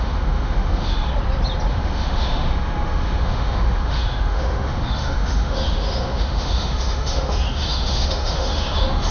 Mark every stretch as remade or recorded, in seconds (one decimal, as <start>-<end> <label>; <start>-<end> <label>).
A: 0.0-1.1 remade; 1.1-1.7 recorded; 1.7-9.1 remade